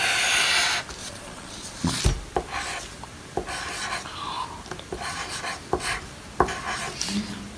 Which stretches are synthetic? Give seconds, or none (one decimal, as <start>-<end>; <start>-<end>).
1.0-2.0